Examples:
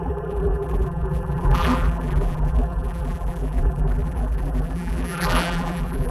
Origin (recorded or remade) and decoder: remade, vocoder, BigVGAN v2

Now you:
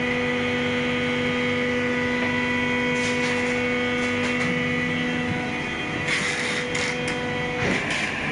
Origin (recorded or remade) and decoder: recorded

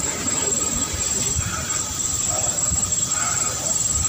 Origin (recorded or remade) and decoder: remade, vocoder, BigVGAN v2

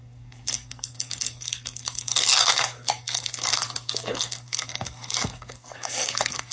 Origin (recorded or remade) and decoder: remade, codec, SNAC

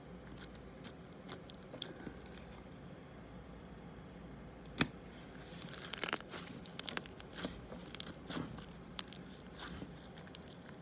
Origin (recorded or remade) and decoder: recorded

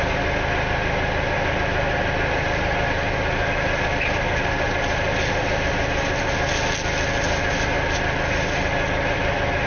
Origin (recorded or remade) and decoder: recorded